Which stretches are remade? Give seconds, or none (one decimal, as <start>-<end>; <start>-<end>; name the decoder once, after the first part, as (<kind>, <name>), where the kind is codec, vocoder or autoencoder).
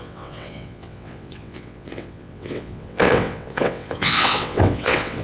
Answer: 0.0-5.2 (vocoder, WaveNeXt)